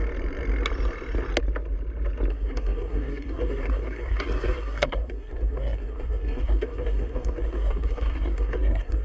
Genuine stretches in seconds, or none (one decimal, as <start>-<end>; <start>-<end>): 0.0-2.3